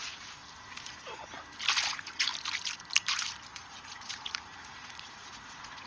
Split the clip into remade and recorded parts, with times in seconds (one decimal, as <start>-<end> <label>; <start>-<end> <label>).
0.0-0.4 remade; 0.4-1.9 recorded; 1.9-2.3 remade; 2.3-3.5 recorded; 3.5-5.9 remade